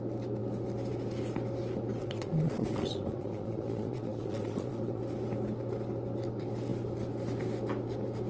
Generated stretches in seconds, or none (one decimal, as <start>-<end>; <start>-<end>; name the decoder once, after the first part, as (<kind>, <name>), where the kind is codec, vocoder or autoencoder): 2.0-5.0 (vocoder, Vocos)